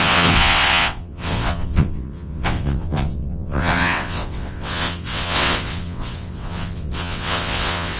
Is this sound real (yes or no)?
no